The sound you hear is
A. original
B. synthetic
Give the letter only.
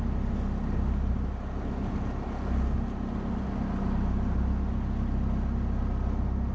A